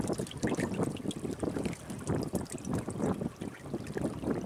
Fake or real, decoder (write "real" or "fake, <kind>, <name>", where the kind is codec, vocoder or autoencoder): real